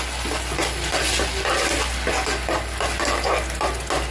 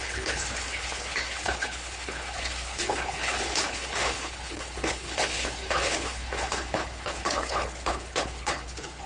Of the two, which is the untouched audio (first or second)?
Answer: first